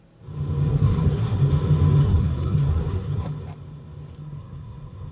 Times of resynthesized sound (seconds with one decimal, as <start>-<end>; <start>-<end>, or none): 0.7-1.5; 2.0-3.3; 4.2-5.1